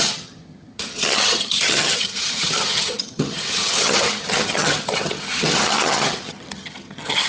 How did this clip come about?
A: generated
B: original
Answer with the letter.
A